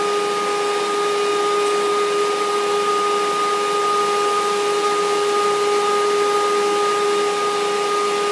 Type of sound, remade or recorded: recorded